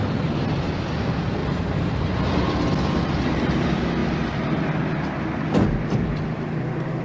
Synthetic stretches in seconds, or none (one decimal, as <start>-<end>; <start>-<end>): 1.4-2.1